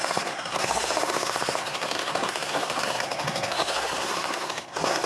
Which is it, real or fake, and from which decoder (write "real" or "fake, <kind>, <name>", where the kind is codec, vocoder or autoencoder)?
fake, codec, SNAC